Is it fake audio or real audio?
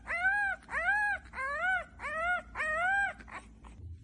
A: real